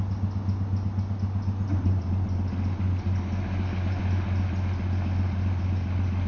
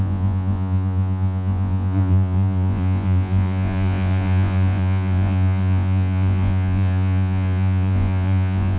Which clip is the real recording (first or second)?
first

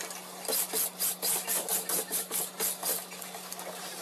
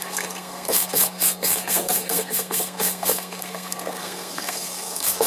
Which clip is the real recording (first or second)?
first